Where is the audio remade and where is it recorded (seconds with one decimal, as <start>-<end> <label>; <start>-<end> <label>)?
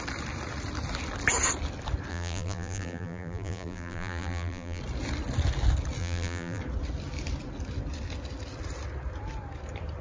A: 0.0-2.1 recorded; 2.1-4.8 remade; 4.8-6.0 recorded; 6.0-6.6 remade; 6.6-10.0 recorded